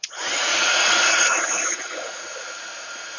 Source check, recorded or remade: remade